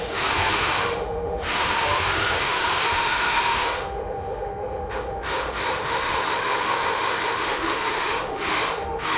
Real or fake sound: fake